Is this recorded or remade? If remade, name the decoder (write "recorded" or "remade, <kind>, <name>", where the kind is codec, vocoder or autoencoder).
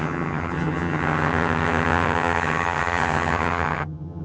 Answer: remade, vocoder, HiFi-GAN